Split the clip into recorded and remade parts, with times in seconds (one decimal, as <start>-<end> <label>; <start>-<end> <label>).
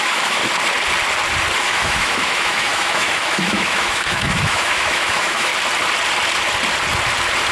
0.0-0.4 remade; 0.4-1.6 recorded; 1.6-5.5 remade; 5.5-7.5 recorded